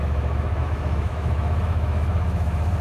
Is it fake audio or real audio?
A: fake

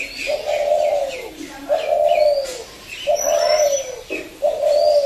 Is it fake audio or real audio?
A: real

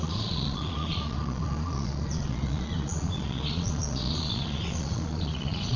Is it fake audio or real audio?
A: fake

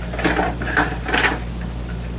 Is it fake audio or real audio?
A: real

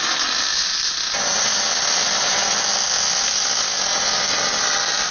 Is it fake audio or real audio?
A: real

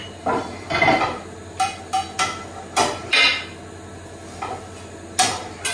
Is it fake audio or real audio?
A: real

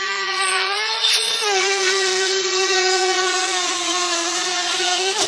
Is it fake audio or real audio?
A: fake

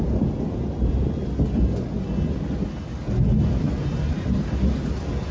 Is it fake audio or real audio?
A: real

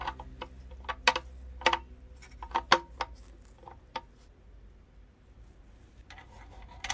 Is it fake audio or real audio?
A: real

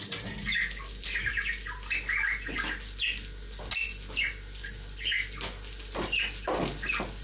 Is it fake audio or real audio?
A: real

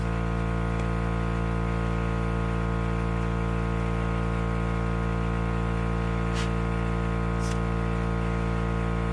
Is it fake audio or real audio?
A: real